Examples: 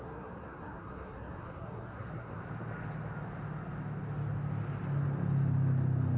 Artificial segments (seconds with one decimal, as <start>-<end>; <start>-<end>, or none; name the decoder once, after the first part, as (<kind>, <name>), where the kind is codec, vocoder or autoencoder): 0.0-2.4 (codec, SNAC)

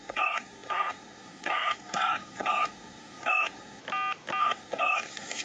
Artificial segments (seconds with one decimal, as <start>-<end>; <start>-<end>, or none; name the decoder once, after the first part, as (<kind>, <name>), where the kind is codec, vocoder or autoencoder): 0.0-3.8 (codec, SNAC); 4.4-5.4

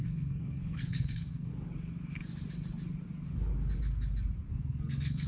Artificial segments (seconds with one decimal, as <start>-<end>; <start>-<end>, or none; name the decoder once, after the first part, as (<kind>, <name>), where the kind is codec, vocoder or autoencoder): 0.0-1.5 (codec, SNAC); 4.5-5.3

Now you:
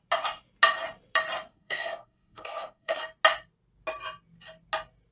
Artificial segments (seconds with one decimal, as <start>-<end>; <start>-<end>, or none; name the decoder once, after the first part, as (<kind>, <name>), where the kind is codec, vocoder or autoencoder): 1.5-3.0 (codec, SNAC)